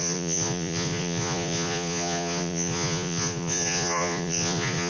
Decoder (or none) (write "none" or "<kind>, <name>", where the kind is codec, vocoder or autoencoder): vocoder, Vocos